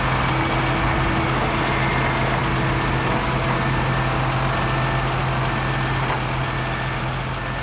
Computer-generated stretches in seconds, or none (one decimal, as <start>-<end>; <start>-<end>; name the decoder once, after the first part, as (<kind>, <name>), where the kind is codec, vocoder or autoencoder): none